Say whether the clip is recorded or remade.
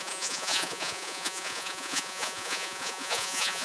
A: remade